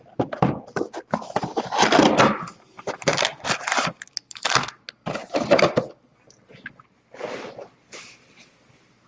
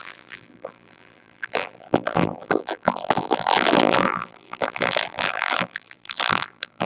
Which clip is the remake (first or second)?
second